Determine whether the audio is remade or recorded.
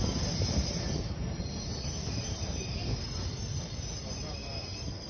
recorded